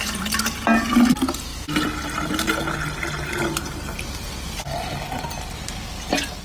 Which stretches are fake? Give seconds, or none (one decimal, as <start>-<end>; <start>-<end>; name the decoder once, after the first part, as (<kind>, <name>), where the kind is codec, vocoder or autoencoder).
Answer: none